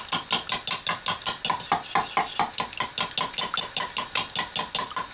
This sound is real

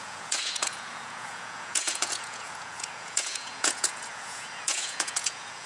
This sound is fake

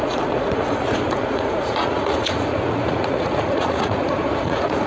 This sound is fake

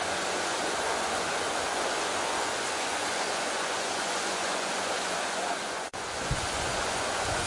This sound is fake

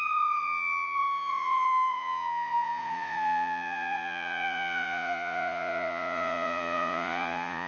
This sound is fake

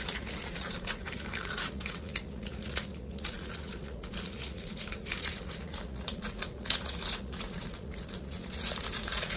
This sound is fake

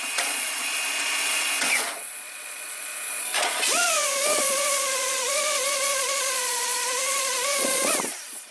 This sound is fake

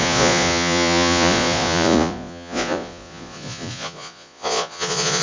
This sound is fake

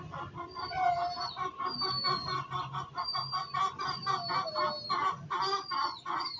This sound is real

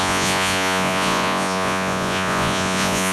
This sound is fake